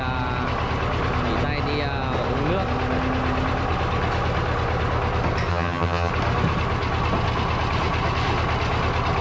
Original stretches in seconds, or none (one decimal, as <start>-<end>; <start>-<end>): 0.0-5.5; 6.1-9.2